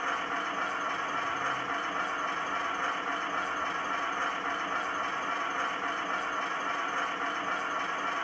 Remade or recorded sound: recorded